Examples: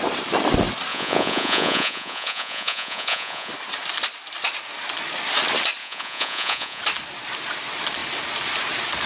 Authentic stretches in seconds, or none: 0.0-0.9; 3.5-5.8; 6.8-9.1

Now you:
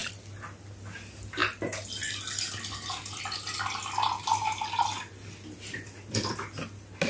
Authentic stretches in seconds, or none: 0.0-7.1

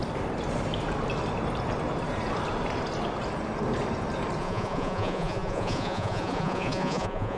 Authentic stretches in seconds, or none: 0.0-4.4

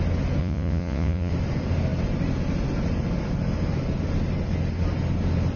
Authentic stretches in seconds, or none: 0.0-0.4; 1.3-5.6

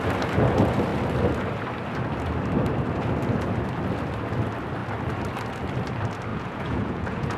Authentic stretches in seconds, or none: 0.0-6.3

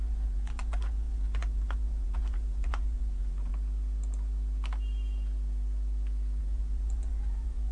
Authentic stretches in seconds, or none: 3.5-6.4